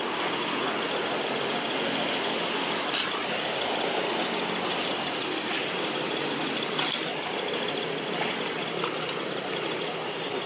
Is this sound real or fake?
real